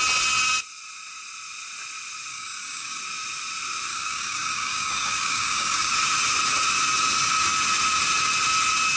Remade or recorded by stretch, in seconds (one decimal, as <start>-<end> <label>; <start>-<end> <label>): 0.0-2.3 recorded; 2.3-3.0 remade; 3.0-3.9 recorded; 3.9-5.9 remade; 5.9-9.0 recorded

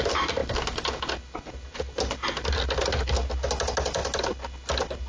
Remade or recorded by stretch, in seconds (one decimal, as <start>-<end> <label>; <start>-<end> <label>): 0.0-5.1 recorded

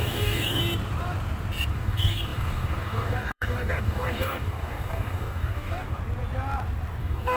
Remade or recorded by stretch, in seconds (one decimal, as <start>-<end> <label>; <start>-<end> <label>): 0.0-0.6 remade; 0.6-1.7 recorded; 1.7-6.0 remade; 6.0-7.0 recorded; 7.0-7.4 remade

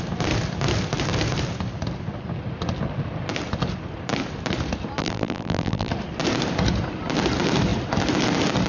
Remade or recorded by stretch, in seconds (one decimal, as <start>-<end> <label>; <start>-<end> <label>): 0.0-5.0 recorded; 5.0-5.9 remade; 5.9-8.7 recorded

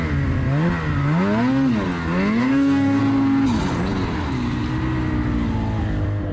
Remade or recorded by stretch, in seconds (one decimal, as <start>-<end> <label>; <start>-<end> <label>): 0.0-2.4 recorded; 2.4-3.0 remade; 3.0-6.3 recorded

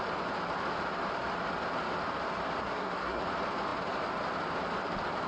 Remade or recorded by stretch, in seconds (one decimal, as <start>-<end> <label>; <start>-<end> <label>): 0.0-2.6 recorded; 2.6-3.2 remade; 3.2-5.3 recorded